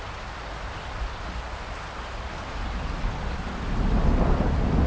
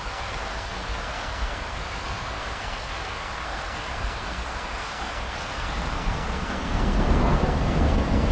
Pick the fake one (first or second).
second